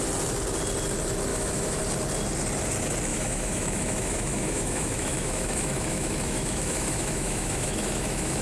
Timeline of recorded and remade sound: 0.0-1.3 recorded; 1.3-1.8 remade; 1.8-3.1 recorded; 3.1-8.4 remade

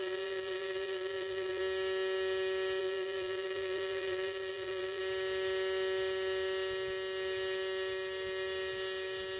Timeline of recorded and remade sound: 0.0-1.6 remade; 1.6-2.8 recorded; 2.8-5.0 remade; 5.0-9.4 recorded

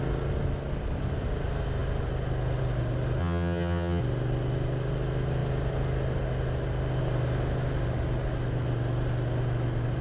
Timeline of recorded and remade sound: 0.0-3.2 recorded; 3.2-4.0 remade; 4.0-10.0 recorded

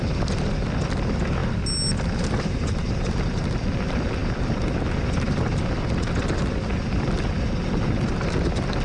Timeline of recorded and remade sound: 0.0-8.8 recorded